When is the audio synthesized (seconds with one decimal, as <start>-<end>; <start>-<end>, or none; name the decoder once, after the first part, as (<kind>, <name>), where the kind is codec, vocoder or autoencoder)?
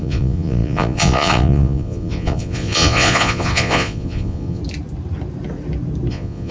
0.0-4.6 (vocoder, Vocos); 6.1-6.5